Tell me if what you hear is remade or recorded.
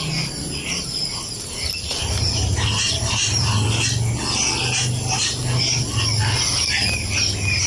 recorded